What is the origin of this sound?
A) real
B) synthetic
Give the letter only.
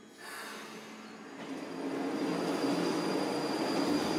A